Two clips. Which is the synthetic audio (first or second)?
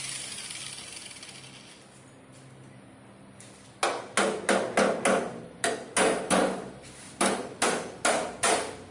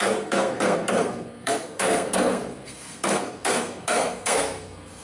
second